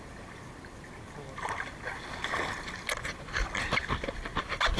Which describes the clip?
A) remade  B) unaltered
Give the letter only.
B